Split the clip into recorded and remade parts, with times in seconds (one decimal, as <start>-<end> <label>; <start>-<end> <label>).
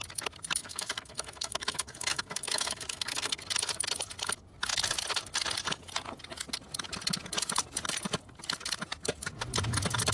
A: 0.0-0.6 recorded; 0.6-3.4 remade; 3.4-10.1 recorded